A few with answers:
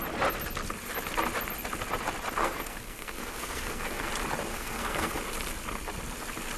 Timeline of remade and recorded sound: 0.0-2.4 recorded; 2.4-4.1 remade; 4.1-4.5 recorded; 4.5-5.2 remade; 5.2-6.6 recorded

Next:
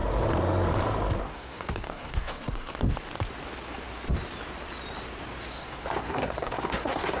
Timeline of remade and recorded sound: 0.0-1.2 recorded; 1.2-2.7 remade; 2.7-5.5 recorded; 5.5-7.2 remade

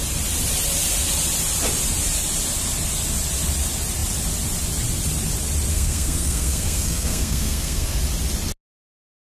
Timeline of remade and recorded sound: 0.0-5.7 recorded; 5.7-8.0 remade; 8.0-9.3 recorded

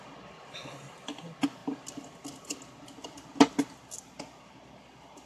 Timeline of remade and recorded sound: 0.0-5.3 recorded